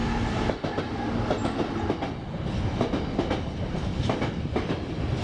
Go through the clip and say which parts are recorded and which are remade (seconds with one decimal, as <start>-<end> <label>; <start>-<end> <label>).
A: 0.0-5.2 recorded